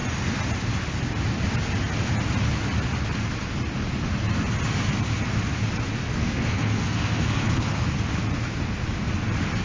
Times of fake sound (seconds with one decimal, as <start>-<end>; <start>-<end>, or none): 6.2-7.8